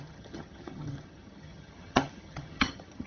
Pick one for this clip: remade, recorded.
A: remade